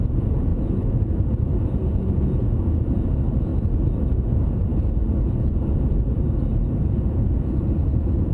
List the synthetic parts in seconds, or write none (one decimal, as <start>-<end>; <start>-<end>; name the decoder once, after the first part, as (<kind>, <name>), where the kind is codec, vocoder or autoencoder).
0.0-3.5 (vocoder, Vocos); 4.1-8.3